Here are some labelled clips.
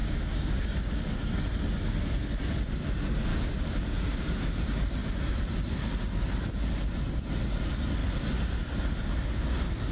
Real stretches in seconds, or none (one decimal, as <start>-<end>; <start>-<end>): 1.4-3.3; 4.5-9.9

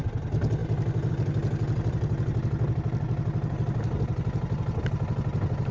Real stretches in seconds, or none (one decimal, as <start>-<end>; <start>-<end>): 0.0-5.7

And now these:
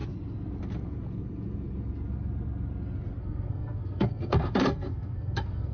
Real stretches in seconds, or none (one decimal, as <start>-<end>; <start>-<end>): 0.0-3.2

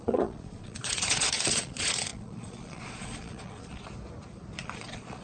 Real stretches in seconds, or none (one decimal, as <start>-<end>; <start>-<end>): 3.9-4.6

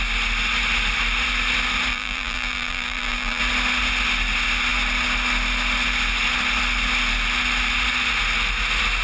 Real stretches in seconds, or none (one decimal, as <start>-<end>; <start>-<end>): 0.0-1.9; 3.4-9.0

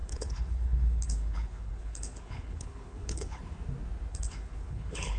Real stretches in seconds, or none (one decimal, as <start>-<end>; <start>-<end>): 3.4-4.1